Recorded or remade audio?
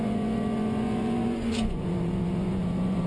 remade